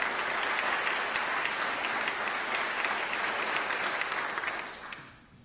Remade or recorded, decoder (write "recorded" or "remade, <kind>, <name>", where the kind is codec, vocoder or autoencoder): recorded